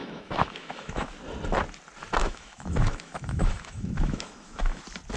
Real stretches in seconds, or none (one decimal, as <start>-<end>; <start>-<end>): 1.1-2.2; 4.8-5.2